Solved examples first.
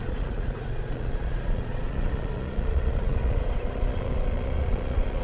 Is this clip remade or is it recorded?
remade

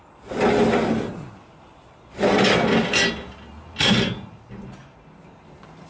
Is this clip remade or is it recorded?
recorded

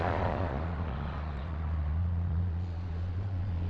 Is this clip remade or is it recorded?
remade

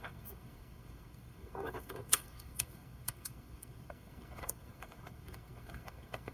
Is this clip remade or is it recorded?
remade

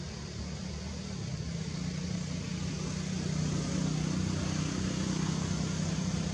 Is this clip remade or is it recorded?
recorded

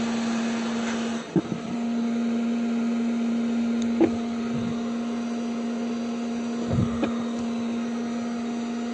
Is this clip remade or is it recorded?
recorded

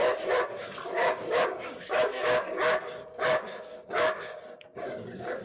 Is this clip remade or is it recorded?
remade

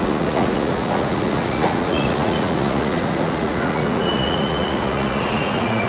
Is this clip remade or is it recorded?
remade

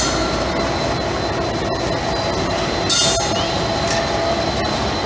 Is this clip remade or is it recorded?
recorded